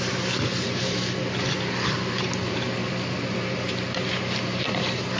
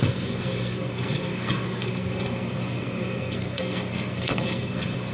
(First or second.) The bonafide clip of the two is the first